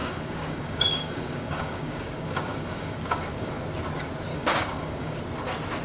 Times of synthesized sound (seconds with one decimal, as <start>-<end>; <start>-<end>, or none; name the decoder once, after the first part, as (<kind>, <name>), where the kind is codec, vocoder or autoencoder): 0.0-3.5 (codec, DAC); 4.3-5.2